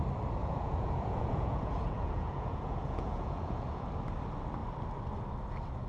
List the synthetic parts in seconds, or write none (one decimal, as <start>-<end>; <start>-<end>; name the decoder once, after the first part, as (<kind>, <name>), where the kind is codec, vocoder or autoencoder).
0.4-3.9 (vocoder, Vocos)